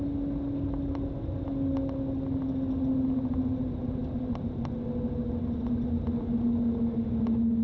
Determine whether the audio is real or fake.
real